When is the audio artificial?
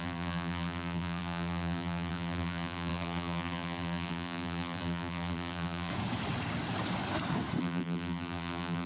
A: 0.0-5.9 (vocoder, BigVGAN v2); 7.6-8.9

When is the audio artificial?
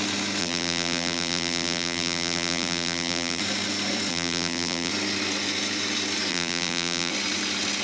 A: 0.4-3.4 (vocoder, BigVGAN v2); 4.1-4.9; 6.3-7.1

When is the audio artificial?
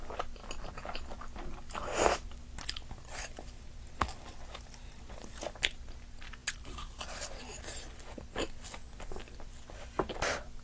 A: none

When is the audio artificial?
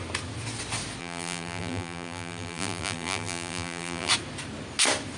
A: 1.0-4.1 (vocoder, BigVGAN v2)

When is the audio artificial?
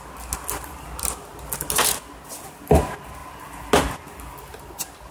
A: none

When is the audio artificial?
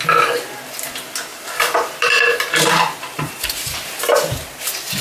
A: 1.3-3.3 (vocoder, BigVGAN v2)